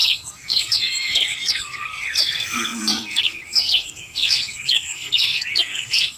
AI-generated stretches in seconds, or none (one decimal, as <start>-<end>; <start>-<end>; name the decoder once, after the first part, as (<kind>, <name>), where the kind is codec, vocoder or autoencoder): 0.0-6.2 (codec, SNAC)